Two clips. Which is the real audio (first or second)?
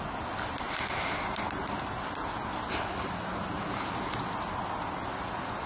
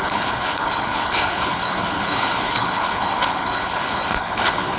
first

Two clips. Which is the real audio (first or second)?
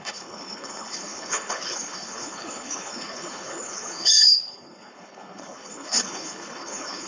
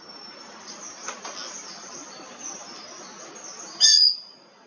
second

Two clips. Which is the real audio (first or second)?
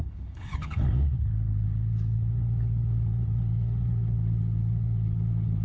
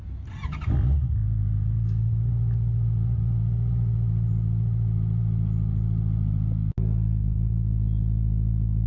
second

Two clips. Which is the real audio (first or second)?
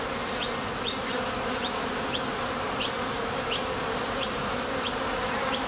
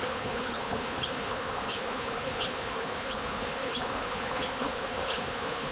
first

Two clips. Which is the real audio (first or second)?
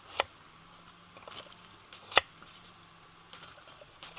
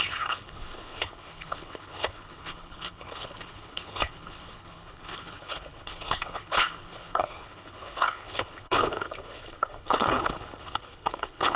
first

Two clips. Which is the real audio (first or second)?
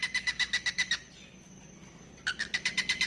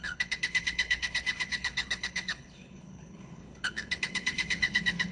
first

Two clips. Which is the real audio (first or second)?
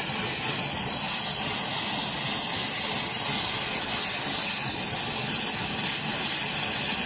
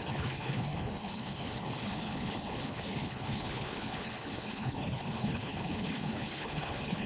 first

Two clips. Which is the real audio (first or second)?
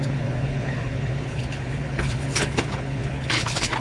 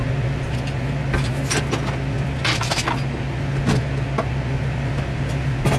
second